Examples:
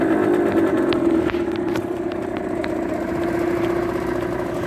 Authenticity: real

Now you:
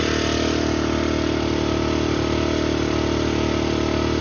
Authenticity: real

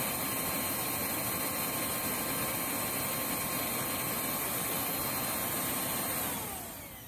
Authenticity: real